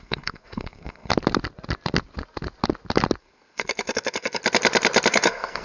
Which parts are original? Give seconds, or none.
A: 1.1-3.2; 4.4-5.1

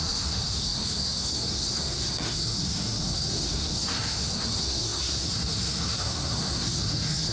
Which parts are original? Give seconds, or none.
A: none

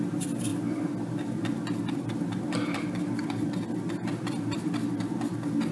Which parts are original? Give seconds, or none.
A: 0.0-5.7

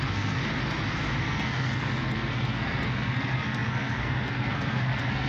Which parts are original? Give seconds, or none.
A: 0.4-1.2

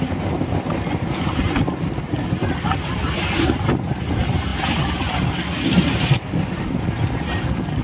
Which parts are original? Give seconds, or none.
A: 0.0-7.8

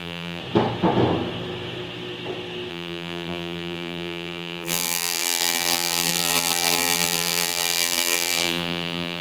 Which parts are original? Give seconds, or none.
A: 0.4-2.7

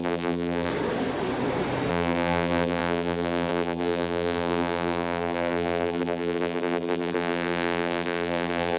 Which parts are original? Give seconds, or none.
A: 0.7-1.9